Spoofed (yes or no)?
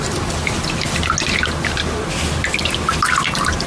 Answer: no